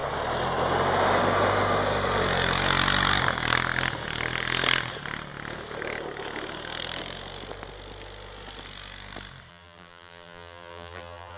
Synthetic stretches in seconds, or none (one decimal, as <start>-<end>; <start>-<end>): 9.5-11.4